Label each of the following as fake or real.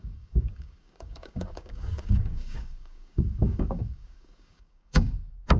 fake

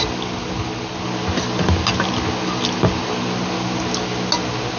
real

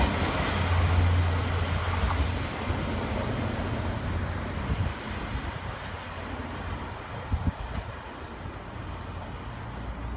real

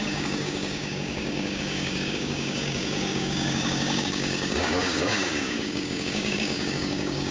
fake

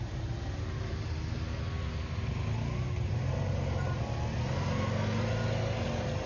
real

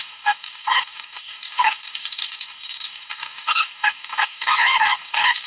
fake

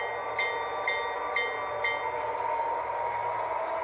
real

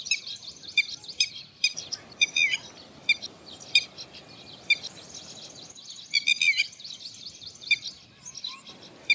real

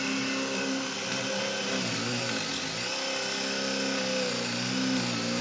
real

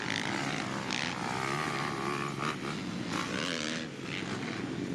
real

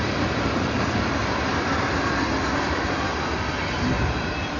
real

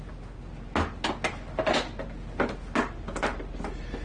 real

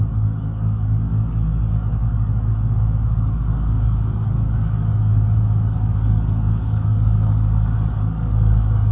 fake